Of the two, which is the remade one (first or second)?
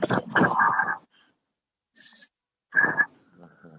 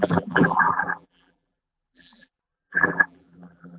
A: second